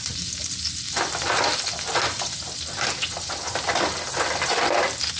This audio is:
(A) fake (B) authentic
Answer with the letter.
B